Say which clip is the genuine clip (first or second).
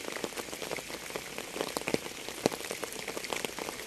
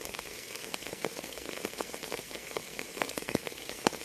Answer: first